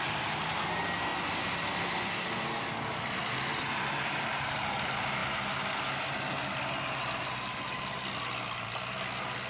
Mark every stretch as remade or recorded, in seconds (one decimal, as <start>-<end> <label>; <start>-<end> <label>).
0.0-9.5 recorded

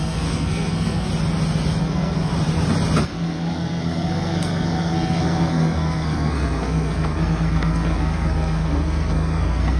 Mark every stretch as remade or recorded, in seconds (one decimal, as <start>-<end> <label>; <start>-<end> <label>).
0.0-1.1 remade; 1.1-1.8 recorded; 1.8-2.3 remade; 2.3-3.0 recorded; 3.0-9.8 remade

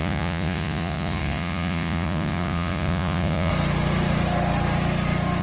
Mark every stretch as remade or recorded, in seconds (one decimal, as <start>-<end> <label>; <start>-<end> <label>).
0.0-3.5 remade; 3.5-5.4 recorded

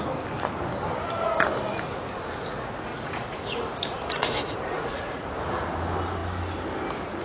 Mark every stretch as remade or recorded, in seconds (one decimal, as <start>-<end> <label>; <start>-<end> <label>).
0.0-2.9 recorded; 2.9-5.3 remade; 5.3-7.2 recorded

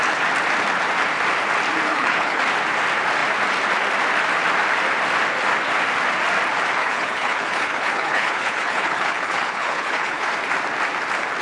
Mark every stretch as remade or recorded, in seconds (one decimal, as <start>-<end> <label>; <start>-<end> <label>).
0.0-1.9 recorded; 1.9-2.4 remade; 2.4-6.8 recorded; 6.8-10.3 remade; 10.3-11.4 recorded

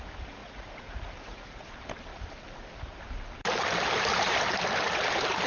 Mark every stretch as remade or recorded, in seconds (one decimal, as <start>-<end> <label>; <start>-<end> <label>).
0.0-0.4 recorded; 0.4-1.7 remade; 1.7-5.5 recorded

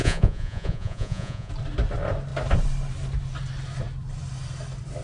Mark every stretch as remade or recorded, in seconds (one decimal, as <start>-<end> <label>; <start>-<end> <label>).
0.0-1.5 remade; 1.5-5.0 recorded